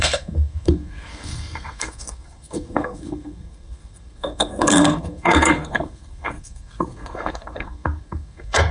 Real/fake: fake